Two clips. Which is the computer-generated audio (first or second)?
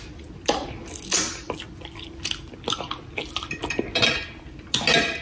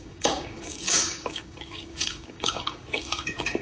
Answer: second